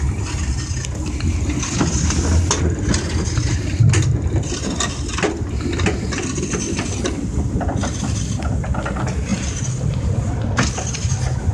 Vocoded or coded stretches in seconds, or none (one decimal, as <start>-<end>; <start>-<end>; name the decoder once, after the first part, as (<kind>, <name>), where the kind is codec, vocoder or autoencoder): none